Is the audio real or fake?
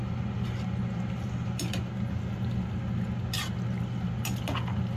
real